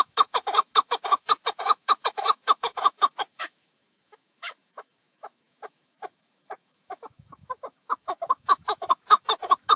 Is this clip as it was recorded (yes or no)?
no